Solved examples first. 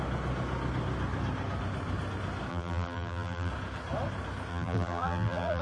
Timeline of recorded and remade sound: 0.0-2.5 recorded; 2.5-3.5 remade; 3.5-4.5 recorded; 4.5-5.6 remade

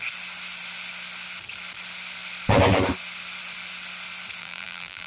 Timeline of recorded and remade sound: 0.0-4.4 recorded; 4.4-5.1 remade

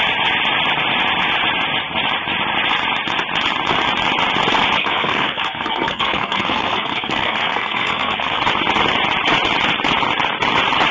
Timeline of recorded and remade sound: 0.0-4.8 recorded; 4.8-8.4 remade; 8.4-10.9 recorded

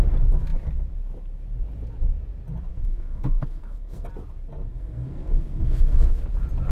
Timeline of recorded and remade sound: 0.0-2.7 recorded; 2.7-4.1 remade; 4.1-4.7 recorded; 4.7-6.2 remade; 6.2-6.7 recorded

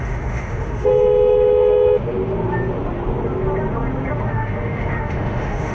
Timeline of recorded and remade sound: 0.0-0.9 remade; 0.9-4.3 recorded; 4.3-5.7 remade

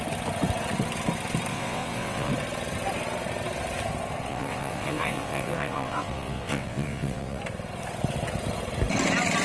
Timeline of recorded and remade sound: 0.0-1.5 recorded; 1.5-2.3 remade; 2.3-4.3 recorded; 4.3-7.4 remade; 7.4-9.4 recorded